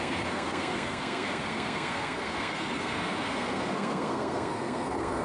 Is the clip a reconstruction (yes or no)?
yes